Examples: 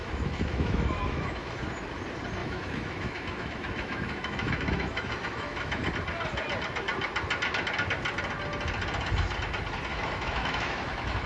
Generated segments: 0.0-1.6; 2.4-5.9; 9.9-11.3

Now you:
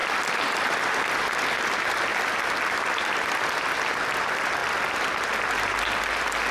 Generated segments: 0.0-0.8; 2.1-3.5

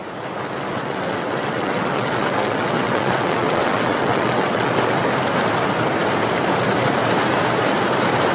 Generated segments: 0.7-4.7

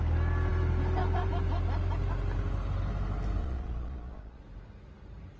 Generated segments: 3.4-4.4

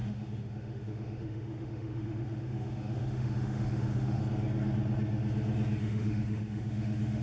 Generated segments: 0.0-4.2; 5.8-7.2